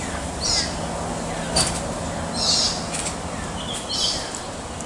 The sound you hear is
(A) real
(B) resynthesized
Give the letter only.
A